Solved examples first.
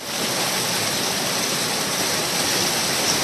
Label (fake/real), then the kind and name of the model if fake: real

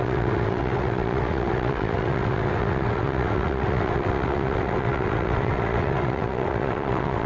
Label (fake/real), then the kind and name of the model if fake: fake, vocoder, WaveNeXt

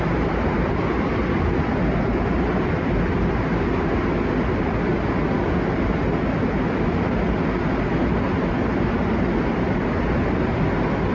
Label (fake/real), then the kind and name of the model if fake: real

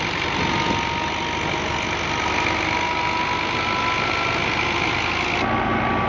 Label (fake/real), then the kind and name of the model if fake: real